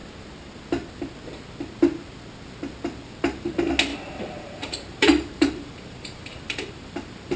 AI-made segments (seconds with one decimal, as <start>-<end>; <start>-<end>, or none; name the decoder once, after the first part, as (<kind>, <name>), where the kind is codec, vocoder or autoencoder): 3.9-7.4 (vocoder, BigVGAN v2)